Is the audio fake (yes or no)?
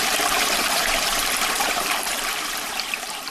yes